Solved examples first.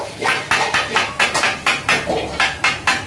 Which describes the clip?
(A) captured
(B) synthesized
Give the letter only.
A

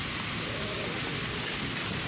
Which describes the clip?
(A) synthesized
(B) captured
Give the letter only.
B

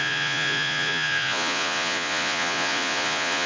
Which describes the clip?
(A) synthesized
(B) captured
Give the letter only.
A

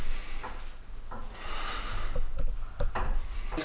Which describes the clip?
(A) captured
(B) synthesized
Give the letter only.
A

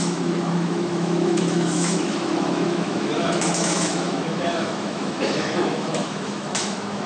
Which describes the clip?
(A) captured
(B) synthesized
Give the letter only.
B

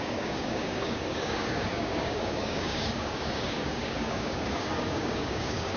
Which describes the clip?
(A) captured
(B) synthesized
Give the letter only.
B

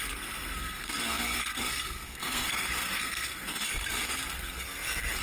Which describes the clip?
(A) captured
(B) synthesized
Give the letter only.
B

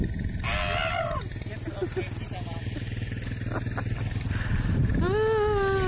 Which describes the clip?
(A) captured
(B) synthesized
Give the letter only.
A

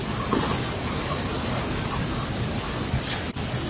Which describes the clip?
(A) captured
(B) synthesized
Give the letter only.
A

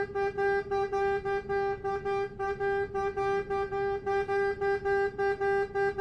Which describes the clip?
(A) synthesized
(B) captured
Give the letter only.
B